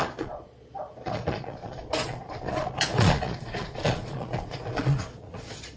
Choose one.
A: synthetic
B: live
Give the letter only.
A